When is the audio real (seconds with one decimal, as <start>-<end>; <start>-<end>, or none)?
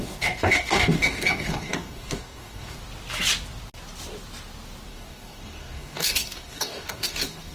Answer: 2.8-4.9